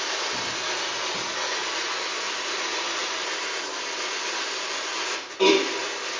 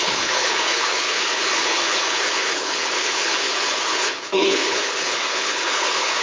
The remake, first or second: second